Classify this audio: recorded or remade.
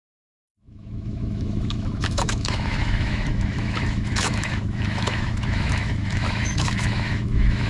remade